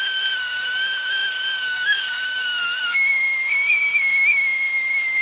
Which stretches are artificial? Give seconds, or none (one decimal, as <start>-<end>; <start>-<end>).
0.0-5.2